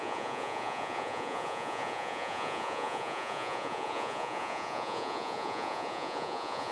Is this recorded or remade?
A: remade